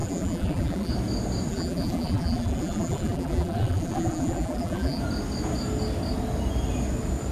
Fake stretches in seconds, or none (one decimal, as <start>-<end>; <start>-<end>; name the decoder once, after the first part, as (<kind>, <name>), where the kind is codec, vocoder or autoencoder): 0.0-0.9 (vocoder, BigVGAN v2); 1.5-5.0